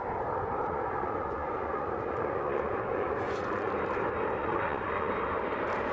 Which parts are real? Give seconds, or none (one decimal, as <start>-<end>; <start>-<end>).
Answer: 0.0-0.6; 3.7-4.4; 5.1-5.9